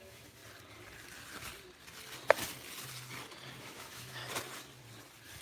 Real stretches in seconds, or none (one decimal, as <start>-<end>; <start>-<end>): 0.4-3.6; 4.2-5.4